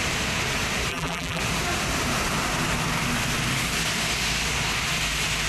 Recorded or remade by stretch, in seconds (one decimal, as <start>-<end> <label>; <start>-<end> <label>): 0.0-0.9 recorded; 0.9-1.4 remade; 1.4-5.5 recorded